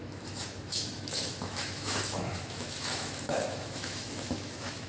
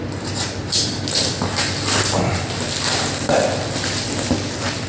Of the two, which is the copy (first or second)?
first